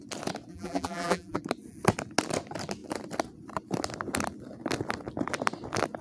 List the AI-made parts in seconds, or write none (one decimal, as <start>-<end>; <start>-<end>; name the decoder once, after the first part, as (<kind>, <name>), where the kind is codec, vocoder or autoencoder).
0.5-1.4 (vocoder, BigVGAN v2)